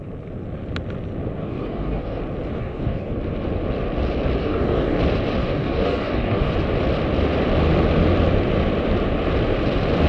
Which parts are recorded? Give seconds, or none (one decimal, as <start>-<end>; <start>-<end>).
0.0-1.4; 2.2-2.6; 3.2-4.4; 5.0-5.4; 6.5-10.1